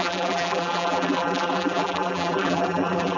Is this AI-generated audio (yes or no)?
yes